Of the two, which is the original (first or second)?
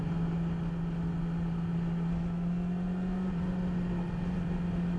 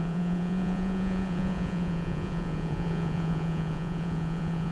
first